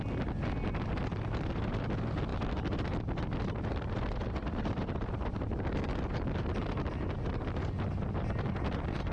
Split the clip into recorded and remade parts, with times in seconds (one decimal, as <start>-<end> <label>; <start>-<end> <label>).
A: 0.0-9.1 recorded